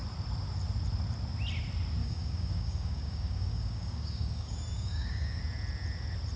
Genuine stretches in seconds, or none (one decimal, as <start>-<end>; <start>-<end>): 0.0-2.0; 5.4-6.4